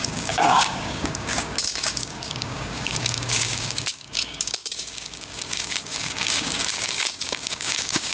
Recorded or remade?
remade